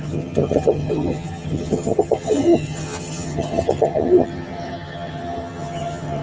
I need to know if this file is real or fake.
fake